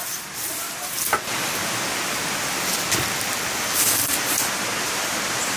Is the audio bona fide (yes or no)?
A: yes